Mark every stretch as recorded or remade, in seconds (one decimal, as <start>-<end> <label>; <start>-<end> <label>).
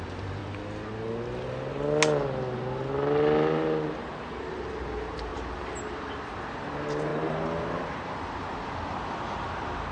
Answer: 0.0-0.4 remade; 0.4-4.5 recorded; 4.5-9.9 remade